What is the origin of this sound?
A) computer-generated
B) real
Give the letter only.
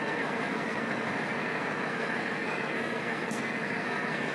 A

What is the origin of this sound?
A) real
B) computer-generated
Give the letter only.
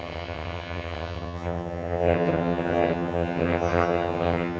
B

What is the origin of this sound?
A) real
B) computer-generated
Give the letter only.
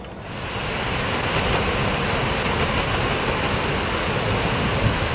A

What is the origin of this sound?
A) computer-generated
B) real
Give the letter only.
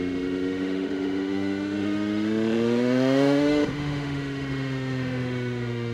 A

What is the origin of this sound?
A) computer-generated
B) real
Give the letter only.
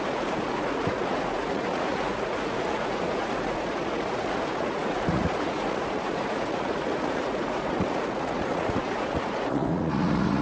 A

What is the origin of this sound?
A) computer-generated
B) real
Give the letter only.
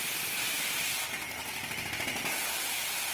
B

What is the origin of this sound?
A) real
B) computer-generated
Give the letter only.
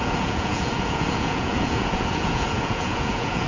B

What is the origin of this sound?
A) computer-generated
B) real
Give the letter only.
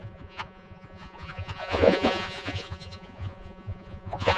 A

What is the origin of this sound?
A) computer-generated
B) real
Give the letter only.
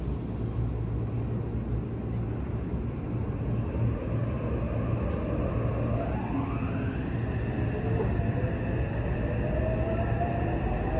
B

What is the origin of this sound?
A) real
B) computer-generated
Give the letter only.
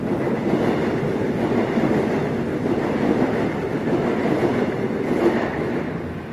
A